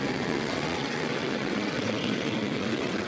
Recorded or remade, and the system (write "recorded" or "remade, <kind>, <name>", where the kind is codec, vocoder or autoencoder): remade, vocoder, WaveNeXt